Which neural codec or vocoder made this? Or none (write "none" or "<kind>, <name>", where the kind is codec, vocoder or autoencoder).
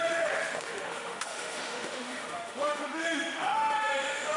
autoencoder, DAC-VAE